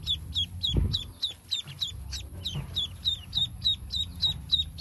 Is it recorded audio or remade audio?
recorded